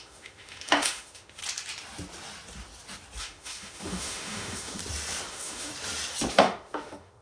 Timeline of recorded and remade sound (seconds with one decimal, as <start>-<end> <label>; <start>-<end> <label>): 0.0-1.4 remade; 1.4-3.2 recorded; 3.2-4.8 remade; 4.8-5.3 recorded; 5.3-5.7 remade; 5.7-6.3 recorded; 6.3-7.2 remade